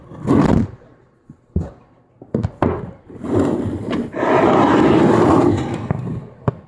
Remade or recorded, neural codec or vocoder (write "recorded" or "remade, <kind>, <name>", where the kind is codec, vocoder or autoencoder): recorded